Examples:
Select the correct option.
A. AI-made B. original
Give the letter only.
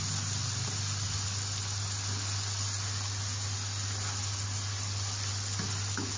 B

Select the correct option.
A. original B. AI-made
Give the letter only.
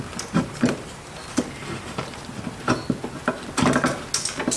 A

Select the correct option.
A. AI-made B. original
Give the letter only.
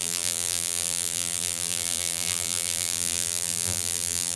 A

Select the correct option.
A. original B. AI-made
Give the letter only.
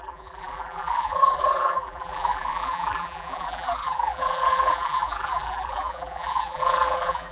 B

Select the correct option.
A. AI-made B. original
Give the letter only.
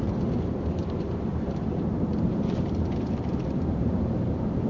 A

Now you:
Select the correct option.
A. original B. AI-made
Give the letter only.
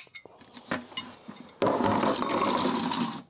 A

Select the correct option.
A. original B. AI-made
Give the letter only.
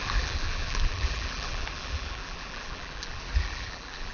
B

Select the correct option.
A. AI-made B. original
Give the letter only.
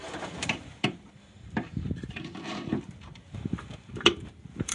A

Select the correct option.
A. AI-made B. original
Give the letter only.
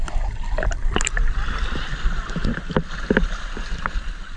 B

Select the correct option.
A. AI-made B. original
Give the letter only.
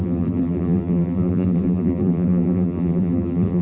A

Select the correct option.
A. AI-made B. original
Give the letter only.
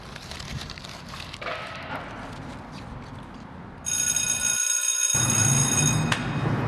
B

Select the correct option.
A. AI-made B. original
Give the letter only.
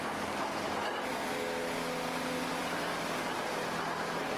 B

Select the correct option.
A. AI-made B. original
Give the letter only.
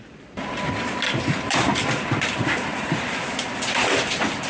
A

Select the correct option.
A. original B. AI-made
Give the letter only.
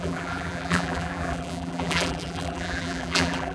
B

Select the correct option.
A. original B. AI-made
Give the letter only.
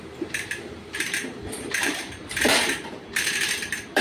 B